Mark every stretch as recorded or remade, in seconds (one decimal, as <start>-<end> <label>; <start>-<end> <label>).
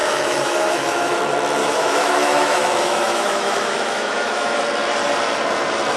0.0-1.2 remade; 1.2-1.6 recorded; 1.6-4.6 remade; 4.6-6.0 recorded